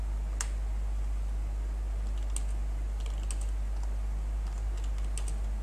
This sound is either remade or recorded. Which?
recorded